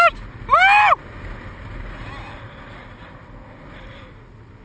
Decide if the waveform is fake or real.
real